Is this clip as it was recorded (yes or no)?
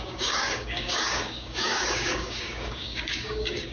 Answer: no